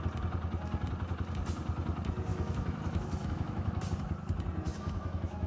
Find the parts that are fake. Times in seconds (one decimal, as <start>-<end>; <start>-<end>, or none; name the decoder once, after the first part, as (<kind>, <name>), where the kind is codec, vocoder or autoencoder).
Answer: 2.3-3.8 (autoencoder, DAC-VAE); 4.7-5.5